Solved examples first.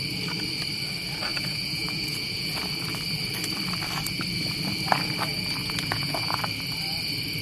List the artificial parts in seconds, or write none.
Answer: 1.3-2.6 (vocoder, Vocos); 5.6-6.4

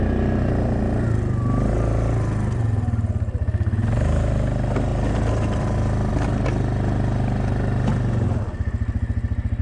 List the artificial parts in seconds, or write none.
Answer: none

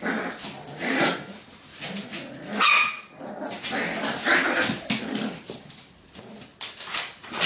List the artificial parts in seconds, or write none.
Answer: none

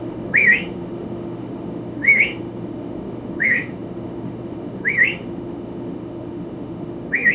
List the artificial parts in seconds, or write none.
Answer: 0.0-7.3 (autoencoder, DAC-VAE)

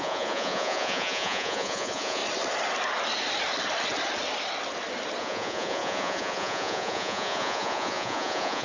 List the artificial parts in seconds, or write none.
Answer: 0.0-2.2 (vocoder, Vocos); 5.2-8.6

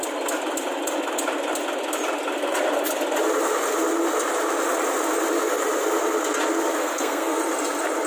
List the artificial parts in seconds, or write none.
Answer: 6.8-7.4 (codec, SNAC)

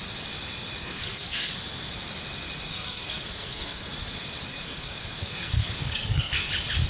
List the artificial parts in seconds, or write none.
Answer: 0.8-1.5 (codec, SNAC); 2.7-3.9; 4.5-6.5

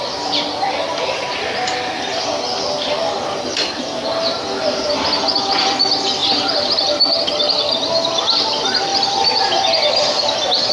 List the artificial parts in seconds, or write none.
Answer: 0.0-8.9 (vocoder, BigVGAN v2); 10.0-10.7